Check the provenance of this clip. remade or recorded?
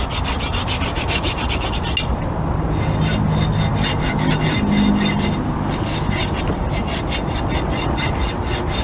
recorded